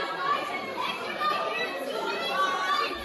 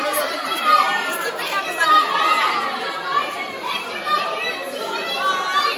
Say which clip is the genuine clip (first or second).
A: second